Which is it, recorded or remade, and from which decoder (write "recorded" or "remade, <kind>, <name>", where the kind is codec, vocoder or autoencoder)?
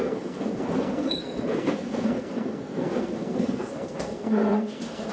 remade, codec, SNAC